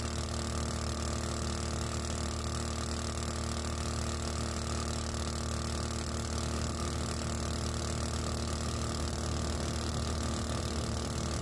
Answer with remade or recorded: recorded